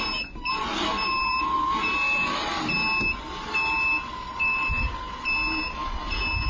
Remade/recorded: recorded